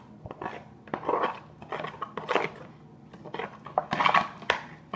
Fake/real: real